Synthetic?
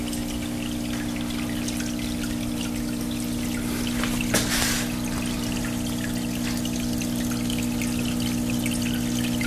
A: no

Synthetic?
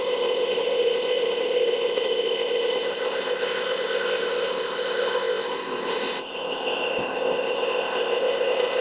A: yes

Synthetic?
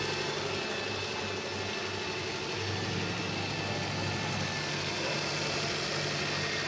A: no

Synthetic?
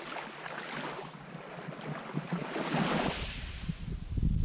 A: no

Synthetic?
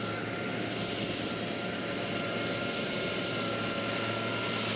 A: no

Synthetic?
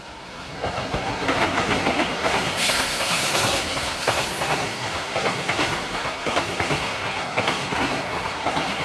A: yes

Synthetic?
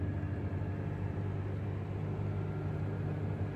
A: no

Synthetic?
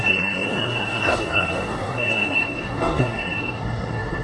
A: yes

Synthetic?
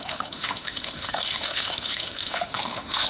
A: yes